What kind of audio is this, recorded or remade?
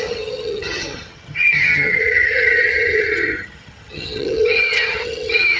remade